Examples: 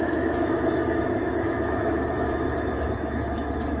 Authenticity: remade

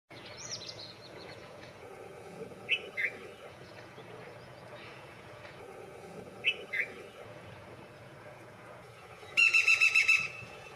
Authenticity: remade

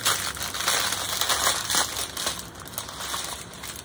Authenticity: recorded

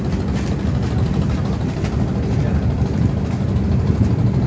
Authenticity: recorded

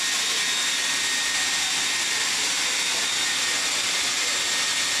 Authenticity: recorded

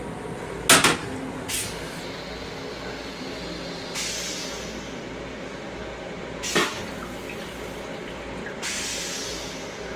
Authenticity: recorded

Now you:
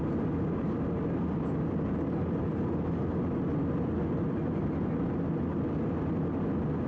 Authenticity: recorded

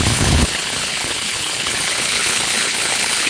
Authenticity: remade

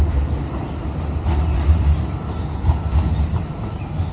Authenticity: recorded